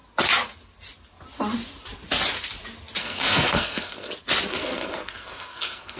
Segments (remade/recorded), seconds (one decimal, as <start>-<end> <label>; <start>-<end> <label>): 0.0-3.0 recorded; 3.0-4.1 remade; 4.1-4.5 recorded; 4.5-6.0 remade